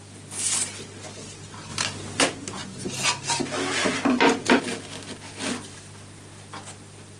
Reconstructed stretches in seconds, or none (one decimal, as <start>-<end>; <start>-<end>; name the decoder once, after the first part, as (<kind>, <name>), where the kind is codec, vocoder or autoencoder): none

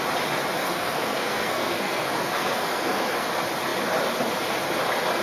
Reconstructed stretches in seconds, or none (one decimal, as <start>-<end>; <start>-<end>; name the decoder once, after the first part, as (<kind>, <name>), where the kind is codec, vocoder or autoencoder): 0.6-3.3 (codec, SNAC)

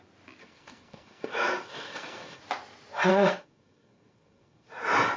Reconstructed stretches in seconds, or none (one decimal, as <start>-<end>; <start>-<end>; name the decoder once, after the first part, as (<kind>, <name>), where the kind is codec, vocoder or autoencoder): 0.4-2.4 (codec, SNAC); 3.1-4.7

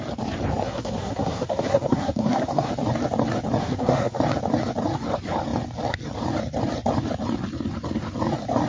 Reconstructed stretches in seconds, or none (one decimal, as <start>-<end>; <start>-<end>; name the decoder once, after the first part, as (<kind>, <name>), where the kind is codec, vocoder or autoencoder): 0.6-2.7 (codec, SNAC); 3.6-4.2